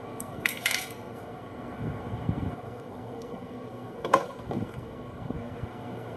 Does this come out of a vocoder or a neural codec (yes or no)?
yes